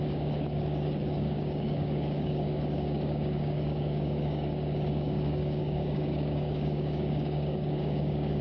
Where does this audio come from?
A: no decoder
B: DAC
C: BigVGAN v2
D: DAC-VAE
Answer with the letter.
B